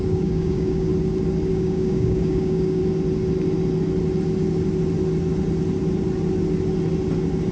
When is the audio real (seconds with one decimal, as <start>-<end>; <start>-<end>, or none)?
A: 0.9-1.5; 2.8-7.5